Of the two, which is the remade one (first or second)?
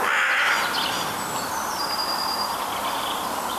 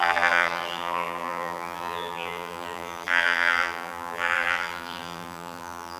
second